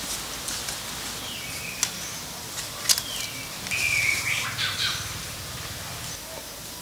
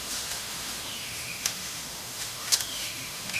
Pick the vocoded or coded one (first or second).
second